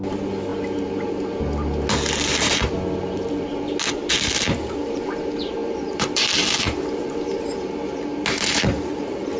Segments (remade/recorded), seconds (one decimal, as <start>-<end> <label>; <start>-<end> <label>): 0.0-5.6 recorded; 5.6-7.7 remade; 7.7-9.4 recorded